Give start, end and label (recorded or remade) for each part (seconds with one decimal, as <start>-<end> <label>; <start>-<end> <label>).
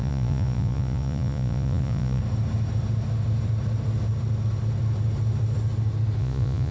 0.0-2.2 remade; 2.2-6.2 recorded; 6.2-6.7 remade